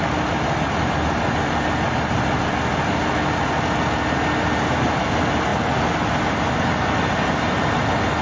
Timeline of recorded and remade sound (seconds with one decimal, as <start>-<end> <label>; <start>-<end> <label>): 0.0-8.2 recorded